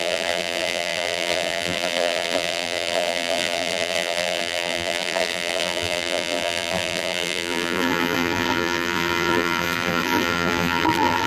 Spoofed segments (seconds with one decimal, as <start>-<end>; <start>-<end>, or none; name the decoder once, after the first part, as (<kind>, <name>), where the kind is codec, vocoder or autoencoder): 0.0-11.3 (vocoder, BigVGAN v2)